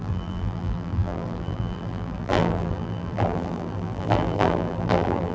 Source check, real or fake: fake